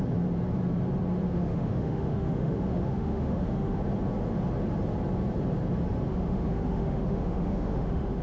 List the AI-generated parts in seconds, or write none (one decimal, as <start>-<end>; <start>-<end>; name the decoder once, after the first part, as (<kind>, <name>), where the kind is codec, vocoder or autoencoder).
1.3-3.8 (autoencoder, DAC-VAE); 6.1-8.2